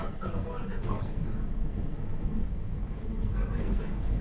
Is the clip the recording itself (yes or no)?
no